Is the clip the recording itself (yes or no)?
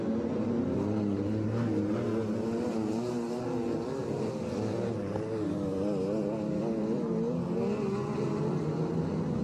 yes